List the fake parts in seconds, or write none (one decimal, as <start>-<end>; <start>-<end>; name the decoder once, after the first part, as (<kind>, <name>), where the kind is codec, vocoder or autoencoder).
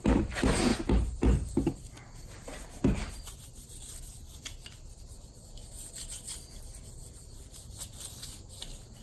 none